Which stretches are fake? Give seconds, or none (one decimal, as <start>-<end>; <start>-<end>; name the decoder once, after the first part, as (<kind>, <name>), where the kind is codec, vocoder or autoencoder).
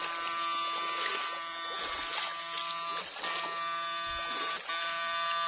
none